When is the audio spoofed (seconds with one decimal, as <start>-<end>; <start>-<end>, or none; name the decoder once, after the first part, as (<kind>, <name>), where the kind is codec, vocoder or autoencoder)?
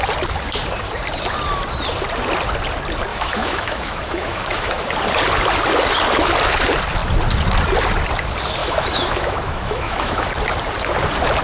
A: 3.1-4.9 (autoencoder, DAC-VAE); 8.6-10.3